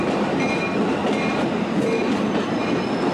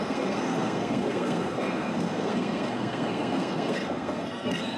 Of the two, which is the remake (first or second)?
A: second